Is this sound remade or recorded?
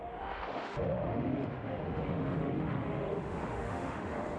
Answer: remade